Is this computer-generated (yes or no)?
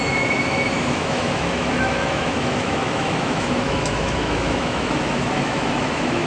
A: yes